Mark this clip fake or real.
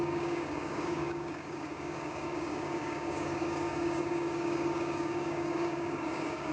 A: fake